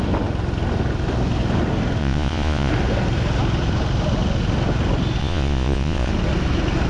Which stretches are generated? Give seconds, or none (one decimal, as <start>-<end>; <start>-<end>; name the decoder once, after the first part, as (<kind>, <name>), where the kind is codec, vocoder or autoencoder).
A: 2.0-2.7 (vocoder, Vocos); 5.2-6.1